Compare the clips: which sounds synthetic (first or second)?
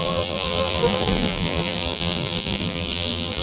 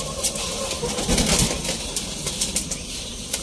first